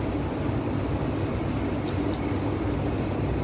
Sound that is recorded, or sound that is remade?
recorded